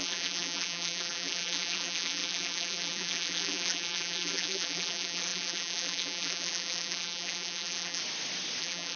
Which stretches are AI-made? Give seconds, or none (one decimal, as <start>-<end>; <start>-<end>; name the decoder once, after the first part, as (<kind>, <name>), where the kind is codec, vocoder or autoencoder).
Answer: 0.0-8.0 (vocoder, BigVGAN v2); 8.6-9.0